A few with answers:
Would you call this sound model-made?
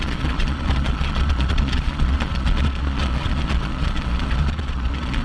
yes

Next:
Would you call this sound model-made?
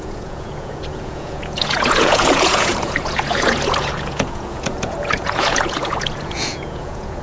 yes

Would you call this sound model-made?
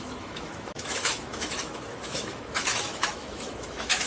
yes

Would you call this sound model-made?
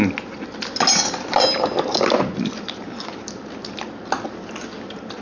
no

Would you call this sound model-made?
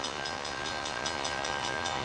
yes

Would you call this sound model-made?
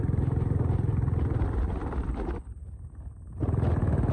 no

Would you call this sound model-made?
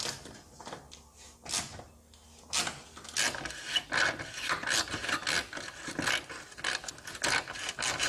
no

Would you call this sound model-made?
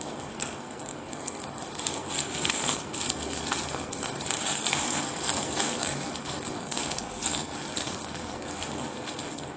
yes